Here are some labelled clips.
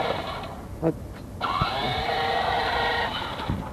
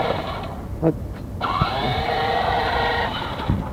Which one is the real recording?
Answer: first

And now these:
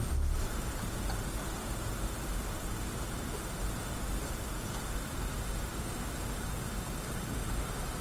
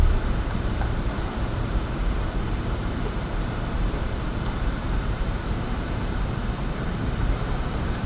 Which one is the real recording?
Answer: first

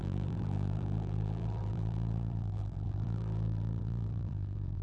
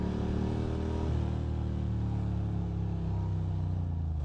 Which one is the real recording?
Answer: second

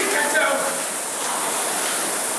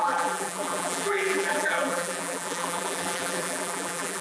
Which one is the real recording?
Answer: first